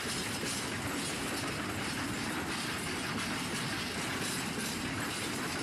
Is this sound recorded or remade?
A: recorded